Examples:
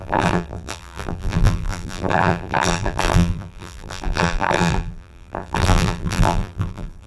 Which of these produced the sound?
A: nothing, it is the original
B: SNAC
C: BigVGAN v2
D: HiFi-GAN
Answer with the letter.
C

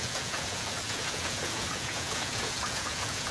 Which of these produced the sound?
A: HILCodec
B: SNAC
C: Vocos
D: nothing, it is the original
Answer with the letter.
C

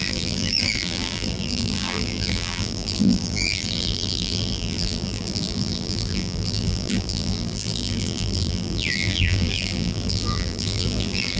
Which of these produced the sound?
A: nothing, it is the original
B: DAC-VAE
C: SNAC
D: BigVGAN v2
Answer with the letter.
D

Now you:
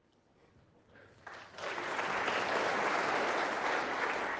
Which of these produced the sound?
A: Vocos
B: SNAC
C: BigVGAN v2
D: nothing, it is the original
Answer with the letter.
D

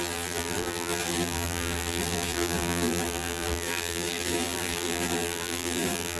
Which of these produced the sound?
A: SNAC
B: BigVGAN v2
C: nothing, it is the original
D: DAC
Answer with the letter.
B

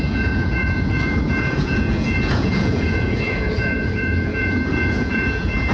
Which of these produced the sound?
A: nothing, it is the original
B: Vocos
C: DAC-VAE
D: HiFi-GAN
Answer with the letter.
B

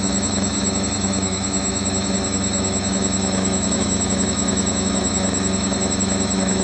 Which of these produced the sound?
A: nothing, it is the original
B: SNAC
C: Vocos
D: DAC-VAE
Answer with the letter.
D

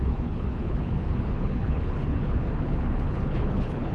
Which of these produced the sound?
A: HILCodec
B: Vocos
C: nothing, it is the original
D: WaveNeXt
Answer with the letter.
A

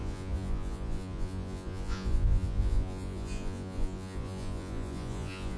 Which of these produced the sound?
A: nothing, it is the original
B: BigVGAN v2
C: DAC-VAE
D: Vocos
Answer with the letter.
D